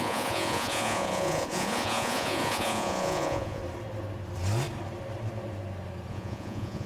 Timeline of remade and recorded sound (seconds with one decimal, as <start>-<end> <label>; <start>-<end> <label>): 0.0-3.6 remade; 3.6-6.1 recorded; 6.1-6.9 remade